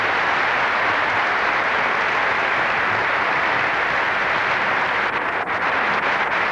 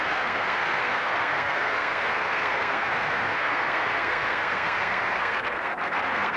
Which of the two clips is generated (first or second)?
second